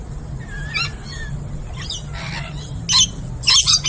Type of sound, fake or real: real